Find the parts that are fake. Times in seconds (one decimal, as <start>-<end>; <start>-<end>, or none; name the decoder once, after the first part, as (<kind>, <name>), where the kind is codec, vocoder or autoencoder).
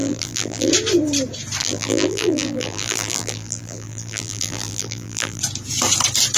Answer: 0.0-0.7 (vocoder, BigVGAN v2); 1.6-5.4